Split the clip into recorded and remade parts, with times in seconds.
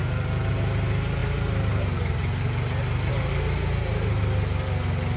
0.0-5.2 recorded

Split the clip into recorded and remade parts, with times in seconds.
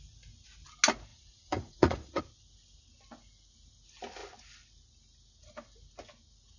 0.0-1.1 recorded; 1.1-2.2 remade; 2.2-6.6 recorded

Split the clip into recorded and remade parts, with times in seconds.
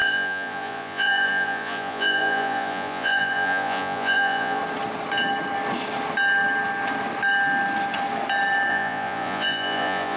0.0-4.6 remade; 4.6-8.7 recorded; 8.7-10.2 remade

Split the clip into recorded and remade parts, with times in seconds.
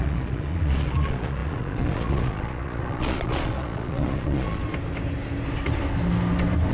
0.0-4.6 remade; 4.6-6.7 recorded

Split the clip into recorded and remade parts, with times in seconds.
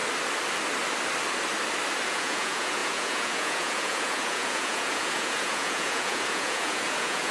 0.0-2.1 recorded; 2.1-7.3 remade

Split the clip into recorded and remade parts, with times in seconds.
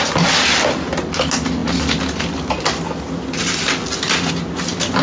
0.0-5.0 recorded